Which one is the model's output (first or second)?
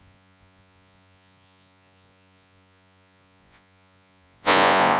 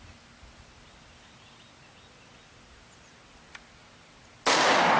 first